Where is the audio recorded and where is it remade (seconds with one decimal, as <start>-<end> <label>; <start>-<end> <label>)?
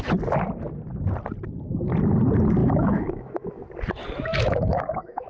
0.0-2.6 recorded; 2.6-3.6 remade; 3.6-4.3 recorded; 4.3-5.3 remade